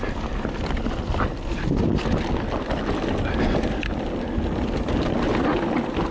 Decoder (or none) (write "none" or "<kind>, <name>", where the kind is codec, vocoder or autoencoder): none